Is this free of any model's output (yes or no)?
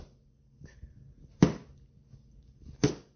yes